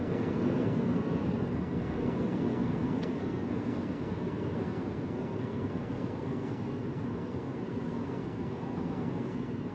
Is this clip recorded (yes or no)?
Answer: no